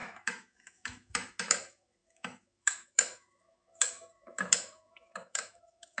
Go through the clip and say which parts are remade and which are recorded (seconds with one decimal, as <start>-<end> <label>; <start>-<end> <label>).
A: 0.0-6.0 remade